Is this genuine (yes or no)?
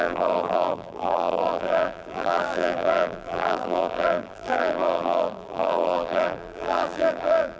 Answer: no